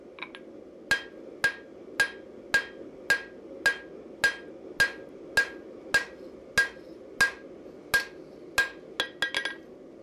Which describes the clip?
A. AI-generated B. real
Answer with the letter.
B